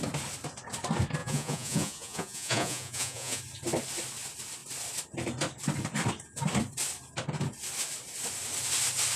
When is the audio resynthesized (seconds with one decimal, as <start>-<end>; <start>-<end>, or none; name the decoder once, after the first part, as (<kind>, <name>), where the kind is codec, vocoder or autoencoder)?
1.2-3.4 (vocoder, Vocos)